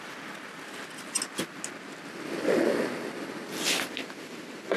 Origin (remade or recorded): recorded